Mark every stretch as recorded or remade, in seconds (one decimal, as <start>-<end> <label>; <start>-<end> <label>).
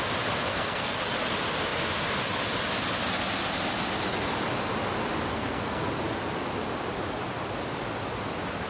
0.0-0.5 recorded; 0.5-1.0 remade; 1.0-5.3 recorded; 5.3-5.9 remade; 5.9-8.7 recorded